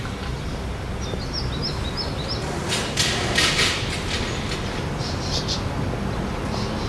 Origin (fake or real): real